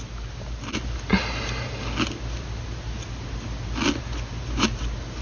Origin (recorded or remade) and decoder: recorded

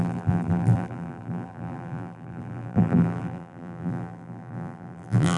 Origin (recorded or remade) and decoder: remade, vocoder, BigVGAN v2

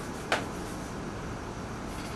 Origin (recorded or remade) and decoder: recorded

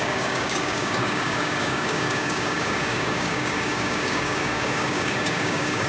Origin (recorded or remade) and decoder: remade, codec, DAC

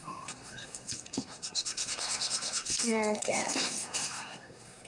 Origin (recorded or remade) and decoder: remade, codec, SNAC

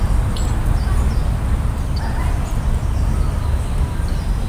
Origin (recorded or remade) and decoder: recorded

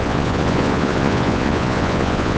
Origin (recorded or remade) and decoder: remade, vocoder, Vocos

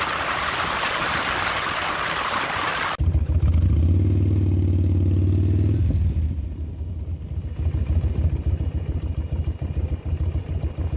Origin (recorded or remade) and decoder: recorded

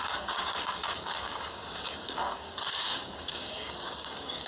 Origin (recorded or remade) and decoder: remade, codec, DAC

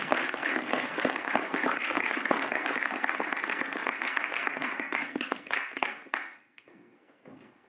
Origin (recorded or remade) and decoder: remade, codec, SNAC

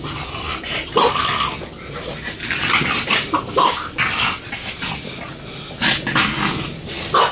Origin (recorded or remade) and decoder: recorded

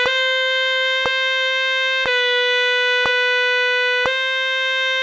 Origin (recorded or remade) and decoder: recorded